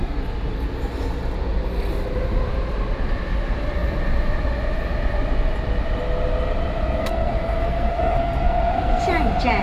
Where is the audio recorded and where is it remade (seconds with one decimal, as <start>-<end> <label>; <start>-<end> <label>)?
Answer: 0.0-7.0 recorded; 7.0-9.0 remade; 9.0-9.6 recorded